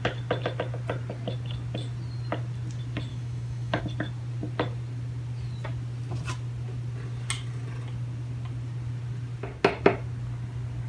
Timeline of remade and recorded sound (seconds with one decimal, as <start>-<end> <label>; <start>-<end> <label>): 0.0-3.1 recorded; 3.1-3.8 remade; 3.8-10.9 recorded